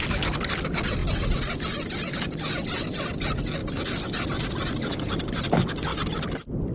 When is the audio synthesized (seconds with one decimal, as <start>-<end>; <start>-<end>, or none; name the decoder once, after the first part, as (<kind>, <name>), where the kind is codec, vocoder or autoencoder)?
3.6-5.5 (vocoder, BigVGAN v2); 5.9-6.7